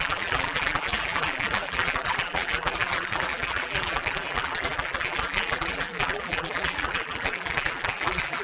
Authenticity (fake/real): fake